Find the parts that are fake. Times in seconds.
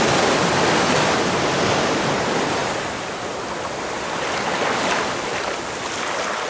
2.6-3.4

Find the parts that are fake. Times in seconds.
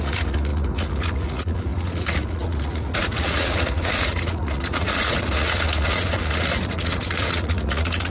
0.0-8.1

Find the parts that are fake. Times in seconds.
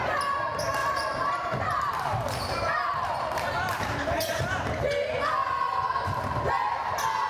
0.8-4.9; 5.4-6.5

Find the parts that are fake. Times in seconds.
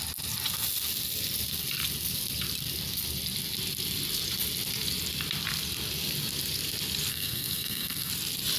7.1-8.1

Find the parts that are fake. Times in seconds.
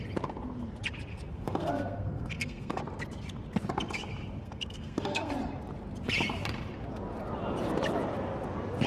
1.1-2.8; 4.4-5.3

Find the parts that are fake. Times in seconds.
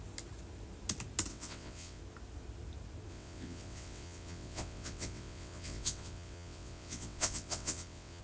1.3-2.0; 3.1-8.2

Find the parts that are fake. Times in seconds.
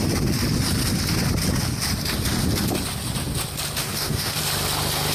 3.8-4.4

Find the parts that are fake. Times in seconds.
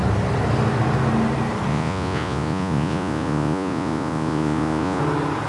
1.7-5.0